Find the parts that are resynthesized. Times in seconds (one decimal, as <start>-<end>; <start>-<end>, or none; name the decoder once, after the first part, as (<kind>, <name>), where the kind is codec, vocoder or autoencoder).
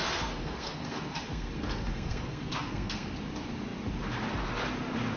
0.0-3.1 (codec, SNAC)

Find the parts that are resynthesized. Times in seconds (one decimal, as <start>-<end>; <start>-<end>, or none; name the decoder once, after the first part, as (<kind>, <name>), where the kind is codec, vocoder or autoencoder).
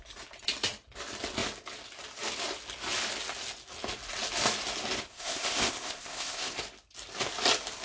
5.1-6.6 (codec, ZipCodec)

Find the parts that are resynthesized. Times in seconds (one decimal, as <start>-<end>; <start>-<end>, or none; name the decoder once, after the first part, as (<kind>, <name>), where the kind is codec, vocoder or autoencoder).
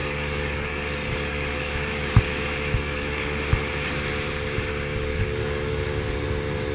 0.0-2.2 (codec, DAC); 2.8-3.4; 5.1-5.9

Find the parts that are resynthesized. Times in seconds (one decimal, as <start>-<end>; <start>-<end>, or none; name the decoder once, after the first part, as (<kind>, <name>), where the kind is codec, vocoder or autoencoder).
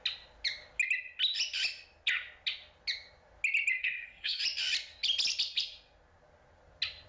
3.8-4.4 (codec, SNAC)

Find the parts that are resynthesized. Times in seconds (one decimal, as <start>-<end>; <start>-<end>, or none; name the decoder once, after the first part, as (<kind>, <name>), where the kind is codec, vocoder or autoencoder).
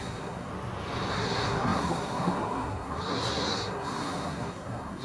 0.0-0.5 (codec, SNAC); 1.1-5.0